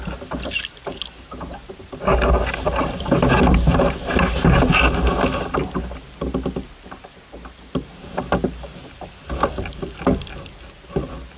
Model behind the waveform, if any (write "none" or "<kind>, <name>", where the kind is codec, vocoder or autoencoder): none